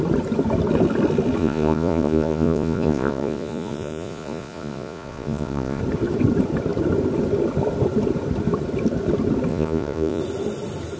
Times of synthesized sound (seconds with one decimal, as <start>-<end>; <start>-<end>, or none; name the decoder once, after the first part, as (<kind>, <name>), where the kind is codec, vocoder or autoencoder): 1.4-5.8 (vocoder, Vocos); 9.5-10.2